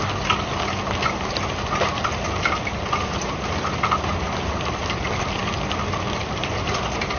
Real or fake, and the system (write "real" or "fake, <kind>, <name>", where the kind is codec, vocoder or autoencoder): real